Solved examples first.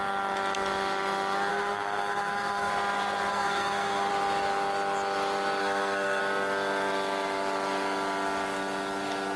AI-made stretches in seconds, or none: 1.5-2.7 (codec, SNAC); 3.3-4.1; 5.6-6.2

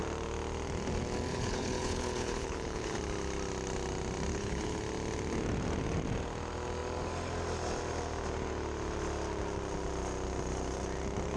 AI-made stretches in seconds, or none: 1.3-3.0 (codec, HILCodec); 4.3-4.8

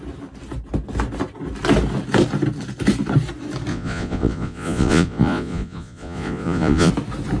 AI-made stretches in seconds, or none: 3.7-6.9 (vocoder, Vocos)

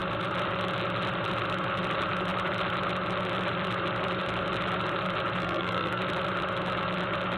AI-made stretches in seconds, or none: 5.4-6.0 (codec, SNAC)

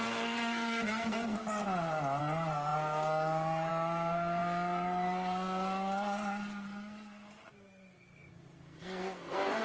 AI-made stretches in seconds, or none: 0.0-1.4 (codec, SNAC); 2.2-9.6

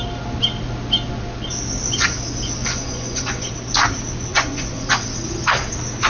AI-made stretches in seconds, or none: 2.6-3.5 (vocoder, Vocos); 4.3-4.9